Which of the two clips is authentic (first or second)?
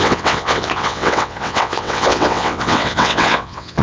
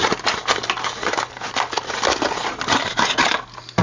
second